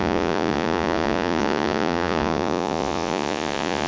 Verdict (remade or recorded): remade